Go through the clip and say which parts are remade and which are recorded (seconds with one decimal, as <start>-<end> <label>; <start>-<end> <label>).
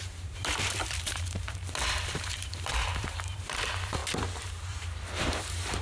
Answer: 0.0-5.8 remade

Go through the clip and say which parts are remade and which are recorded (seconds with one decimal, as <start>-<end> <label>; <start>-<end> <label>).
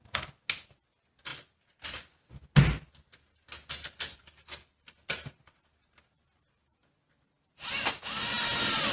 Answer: 0.0-8.9 recorded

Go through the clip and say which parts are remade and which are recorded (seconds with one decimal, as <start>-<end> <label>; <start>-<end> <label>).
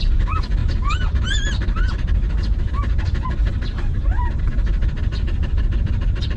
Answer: 0.0-6.4 remade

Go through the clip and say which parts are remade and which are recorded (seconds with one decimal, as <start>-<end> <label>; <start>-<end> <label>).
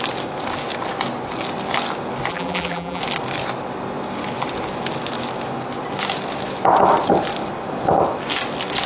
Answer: 0.0-2.3 recorded; 2.3-3.0 remade; 3.0-8.9 recorded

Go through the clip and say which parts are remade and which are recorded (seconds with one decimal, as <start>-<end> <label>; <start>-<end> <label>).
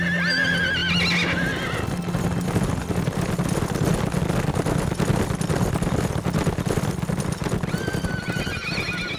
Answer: 0.0-9.2 recorded